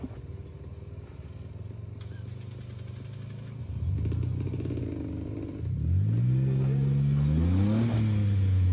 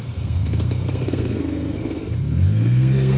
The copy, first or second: second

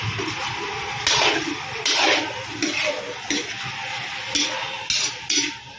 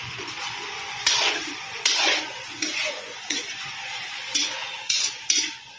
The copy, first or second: second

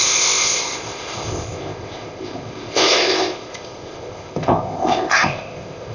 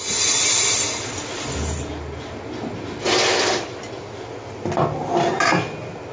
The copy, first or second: first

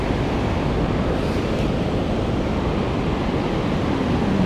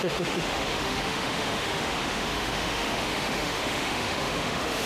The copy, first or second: second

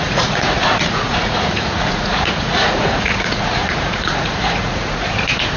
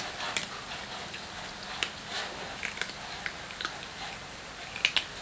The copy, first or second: first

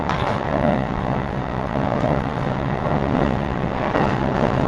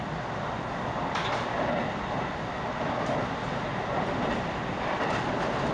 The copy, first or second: first